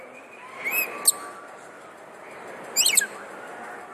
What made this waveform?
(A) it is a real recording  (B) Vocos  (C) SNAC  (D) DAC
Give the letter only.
A